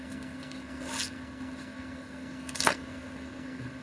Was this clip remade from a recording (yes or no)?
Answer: yes